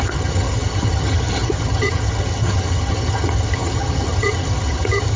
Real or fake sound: fake